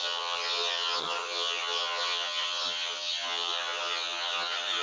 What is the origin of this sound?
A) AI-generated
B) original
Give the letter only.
A